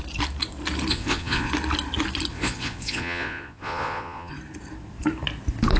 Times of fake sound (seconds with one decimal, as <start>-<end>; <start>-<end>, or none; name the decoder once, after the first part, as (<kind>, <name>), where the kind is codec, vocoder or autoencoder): 0.9-1.5 (vocoder, Vocos); 2.3-4.3